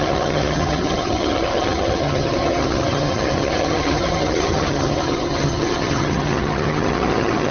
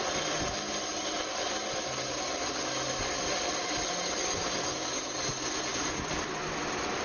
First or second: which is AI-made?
first